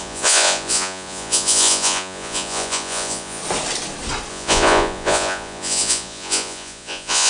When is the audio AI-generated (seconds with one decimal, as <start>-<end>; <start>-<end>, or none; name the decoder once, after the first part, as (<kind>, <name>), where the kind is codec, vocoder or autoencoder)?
0.0-3.4 (vocoder, Vocos); 4.3-7.3